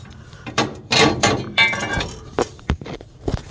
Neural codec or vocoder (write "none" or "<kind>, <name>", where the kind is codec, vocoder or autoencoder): vocoder, BigVGAN v2